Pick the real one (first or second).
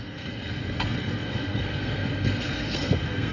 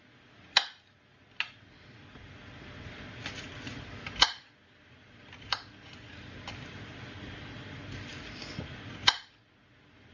second